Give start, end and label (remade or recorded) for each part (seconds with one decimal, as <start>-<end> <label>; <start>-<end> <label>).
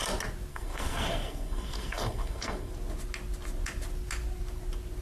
0.0-0.5 recorded; 0.5-2.7 remade; 2.7-5.0 recorded